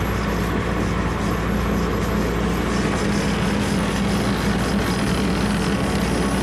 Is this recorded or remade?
recorded